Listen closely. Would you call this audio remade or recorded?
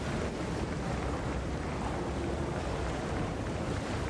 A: recorded